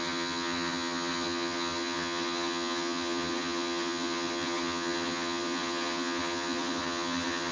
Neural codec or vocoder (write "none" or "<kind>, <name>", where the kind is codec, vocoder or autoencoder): vocoder, HiFi-GAN